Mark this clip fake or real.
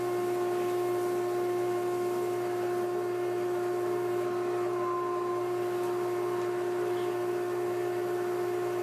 real